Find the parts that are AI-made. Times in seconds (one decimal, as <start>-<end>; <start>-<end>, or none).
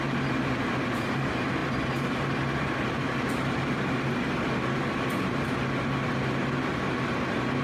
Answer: none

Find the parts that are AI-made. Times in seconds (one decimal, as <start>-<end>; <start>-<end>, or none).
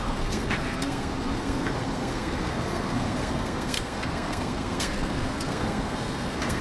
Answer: 0.0-6.6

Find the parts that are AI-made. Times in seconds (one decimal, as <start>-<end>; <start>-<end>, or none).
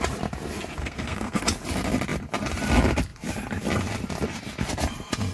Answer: 0.8-1.4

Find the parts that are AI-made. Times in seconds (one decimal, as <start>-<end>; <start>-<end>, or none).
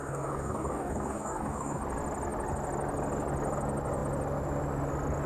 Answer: 0.0-1.8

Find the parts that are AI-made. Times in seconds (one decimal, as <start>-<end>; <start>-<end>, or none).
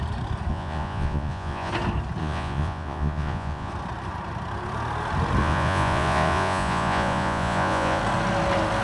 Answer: 0.5-1.7; 2.2-3.7; 5.4-8.0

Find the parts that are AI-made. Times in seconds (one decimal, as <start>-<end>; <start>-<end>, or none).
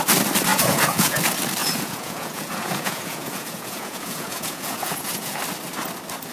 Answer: 0.5-1.2; 1.6-5.4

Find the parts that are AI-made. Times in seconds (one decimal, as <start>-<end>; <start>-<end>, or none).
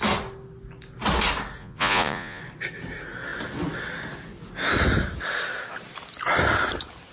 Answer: 1.6-2.4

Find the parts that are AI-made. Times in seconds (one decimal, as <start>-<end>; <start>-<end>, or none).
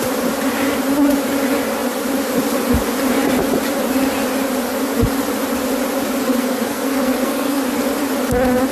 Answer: 6.2-7.6